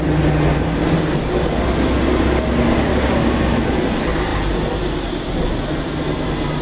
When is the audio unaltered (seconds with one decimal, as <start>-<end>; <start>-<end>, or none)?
0.0-2.9; 3.4-6.6